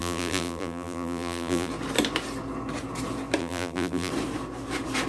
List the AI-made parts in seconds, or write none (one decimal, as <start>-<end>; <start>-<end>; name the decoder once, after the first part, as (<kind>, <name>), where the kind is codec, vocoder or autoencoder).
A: 0.0-1.7 (vocoder, BigVGAN v2); 3.4-4.1